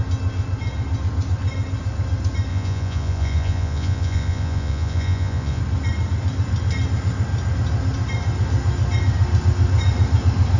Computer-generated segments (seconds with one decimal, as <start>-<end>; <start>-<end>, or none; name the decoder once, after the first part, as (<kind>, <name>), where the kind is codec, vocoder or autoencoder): 2.5-5.6 (vocoder, Vocos)